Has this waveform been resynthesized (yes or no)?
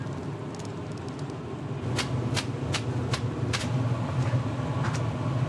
no